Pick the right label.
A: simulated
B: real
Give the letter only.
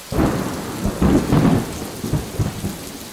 B